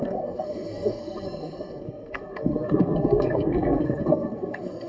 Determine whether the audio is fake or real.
fake